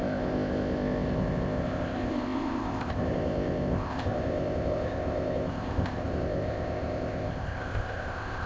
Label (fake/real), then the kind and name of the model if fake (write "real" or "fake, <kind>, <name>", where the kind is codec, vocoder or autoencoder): fake, codec, ZipCodec